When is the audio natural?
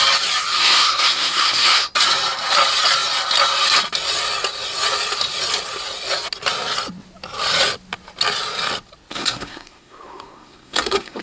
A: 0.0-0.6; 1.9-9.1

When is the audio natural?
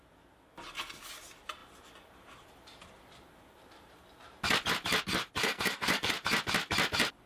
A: 0.0-5.4; 6.1-7.3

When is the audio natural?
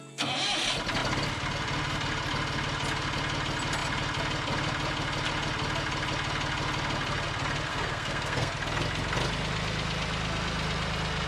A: 0.0-7.7; 8.5-11.3